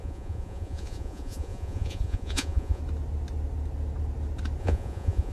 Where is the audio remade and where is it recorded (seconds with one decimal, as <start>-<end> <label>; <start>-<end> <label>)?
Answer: 0.0-2.8 remade; 2.8-4.6 recorded; 4.6-5.3 remade